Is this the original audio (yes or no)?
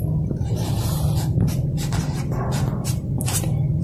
yes